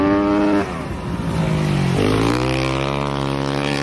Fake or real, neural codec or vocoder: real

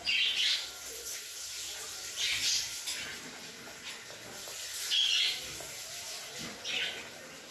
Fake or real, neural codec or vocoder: real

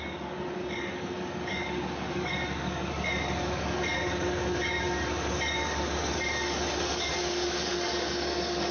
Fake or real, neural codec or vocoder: fake, codec, DAC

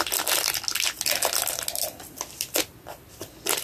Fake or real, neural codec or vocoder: real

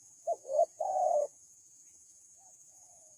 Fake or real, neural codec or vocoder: fake, vocoder, Vocos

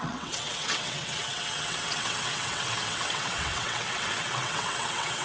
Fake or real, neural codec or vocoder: fake, vocoder, WaveNeXt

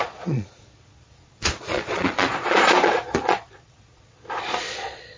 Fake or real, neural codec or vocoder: fake, vocoder, Vocos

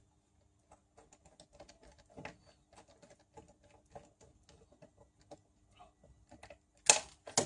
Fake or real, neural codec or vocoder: real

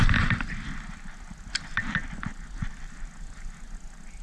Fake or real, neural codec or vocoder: real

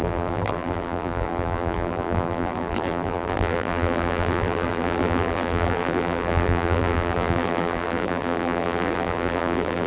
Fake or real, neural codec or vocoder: fake, vocoder, BigVGAN v2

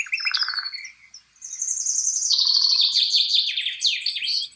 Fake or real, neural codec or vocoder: real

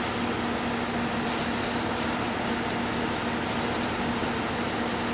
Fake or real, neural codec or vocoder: real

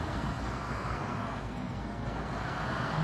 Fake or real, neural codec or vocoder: fake, codec, SNAC